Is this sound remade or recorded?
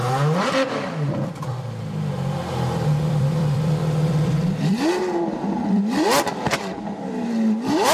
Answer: remade